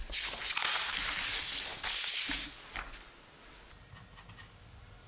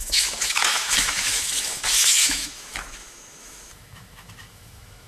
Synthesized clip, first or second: second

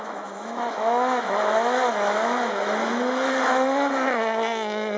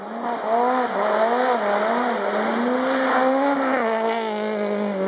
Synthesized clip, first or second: first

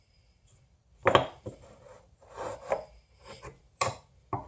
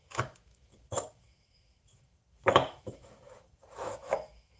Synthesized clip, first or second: second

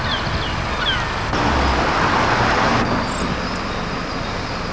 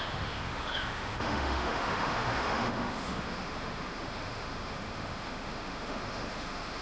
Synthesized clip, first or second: second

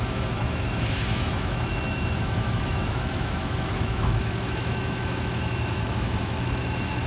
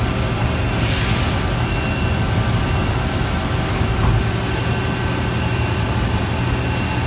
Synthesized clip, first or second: first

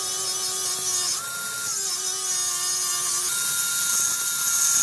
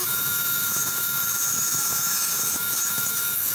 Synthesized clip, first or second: second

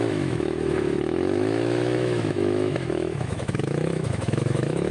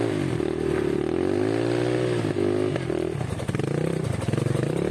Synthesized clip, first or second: first